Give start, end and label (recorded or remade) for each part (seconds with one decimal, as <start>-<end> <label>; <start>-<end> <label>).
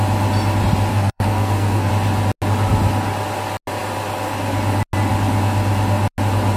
0.0-0.9 recorded; 0.9-1.9 remade; 1.9-6.6 recorded